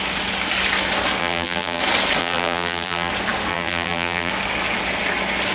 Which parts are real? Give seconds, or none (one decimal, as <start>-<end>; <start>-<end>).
0.0-1.2; 1.8-2.2; 3.1-3.5; 4.3-5.5